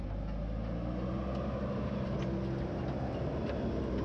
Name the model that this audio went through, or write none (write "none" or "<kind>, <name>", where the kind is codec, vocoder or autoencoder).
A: none